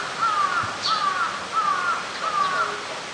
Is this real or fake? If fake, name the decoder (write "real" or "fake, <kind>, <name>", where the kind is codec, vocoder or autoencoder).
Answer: real